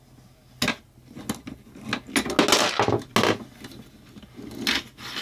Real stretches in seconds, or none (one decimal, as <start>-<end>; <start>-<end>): 0.0-5.2